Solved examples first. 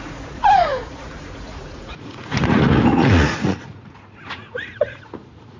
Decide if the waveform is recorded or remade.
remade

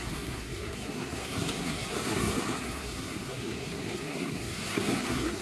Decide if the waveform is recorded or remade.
remade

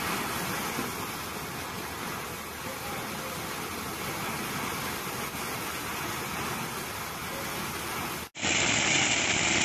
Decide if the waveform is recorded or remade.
recorded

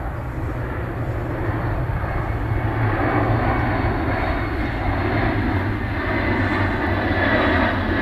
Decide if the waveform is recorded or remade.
recorded